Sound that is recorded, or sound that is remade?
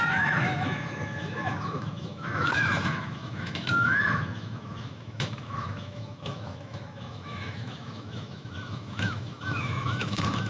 remade